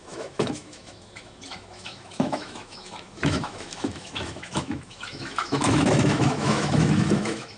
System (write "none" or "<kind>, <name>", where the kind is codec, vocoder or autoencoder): autoencoder, DAC-VAE